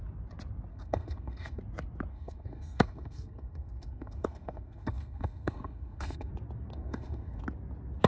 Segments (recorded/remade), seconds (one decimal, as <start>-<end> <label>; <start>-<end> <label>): 0.0-0.7 recorded; 0.7-1.6 remade; 1.6-2.1 recorded; 2.1-6.3 remade; 6.3-6.7 recorded; 6.7-7.4 remade; 7.4-8.1 recorded